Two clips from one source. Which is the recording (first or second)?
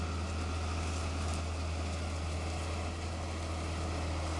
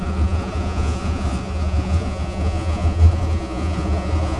first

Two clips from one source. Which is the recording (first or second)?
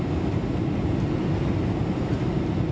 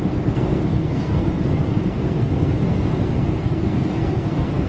first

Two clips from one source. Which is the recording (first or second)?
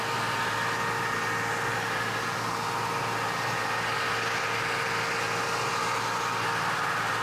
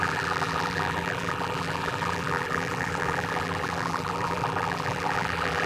first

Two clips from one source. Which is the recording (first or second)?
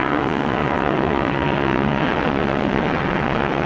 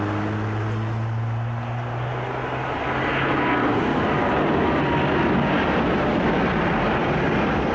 second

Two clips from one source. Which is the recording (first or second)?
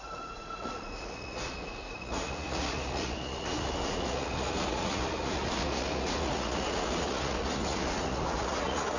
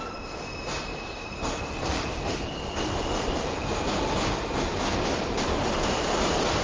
second